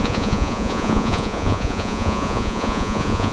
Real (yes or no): no